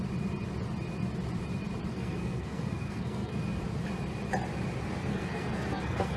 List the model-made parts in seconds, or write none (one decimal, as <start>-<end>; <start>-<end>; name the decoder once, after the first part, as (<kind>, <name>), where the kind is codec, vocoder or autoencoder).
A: 1.9-3.3 (codec, SNAC); 5.1-6.2